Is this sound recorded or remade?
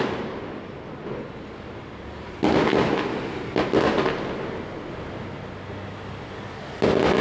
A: recorded